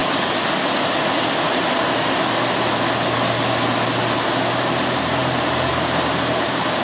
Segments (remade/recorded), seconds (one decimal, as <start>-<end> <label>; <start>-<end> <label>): 0.0-6.8 recorded